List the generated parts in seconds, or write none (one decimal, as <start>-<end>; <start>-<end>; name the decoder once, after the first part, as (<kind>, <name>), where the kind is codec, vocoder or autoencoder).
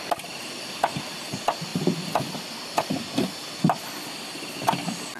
none